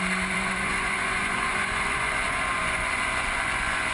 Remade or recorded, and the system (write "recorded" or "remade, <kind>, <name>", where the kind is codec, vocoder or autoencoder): remade, vocoder, Vocos